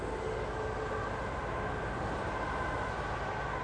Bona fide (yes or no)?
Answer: yes